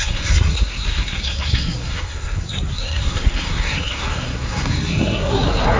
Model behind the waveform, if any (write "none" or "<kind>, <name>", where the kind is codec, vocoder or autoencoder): codec, SNAC